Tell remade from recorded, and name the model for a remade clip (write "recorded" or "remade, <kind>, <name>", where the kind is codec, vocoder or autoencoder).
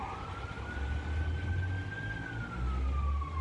recorded